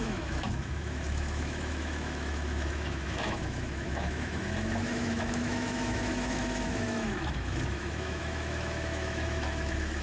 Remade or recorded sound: remade